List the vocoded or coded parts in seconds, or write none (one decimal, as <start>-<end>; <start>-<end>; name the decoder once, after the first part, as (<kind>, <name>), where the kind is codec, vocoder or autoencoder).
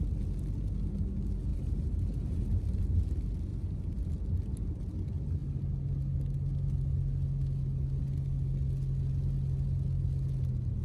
1.5-2.8 (vocoder, BigVGAN v2); 3.5-4.1